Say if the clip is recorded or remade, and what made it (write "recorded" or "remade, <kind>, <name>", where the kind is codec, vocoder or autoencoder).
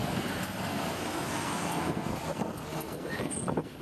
remade, codec, SNAC